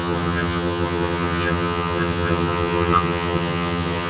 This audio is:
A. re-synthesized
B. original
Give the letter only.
A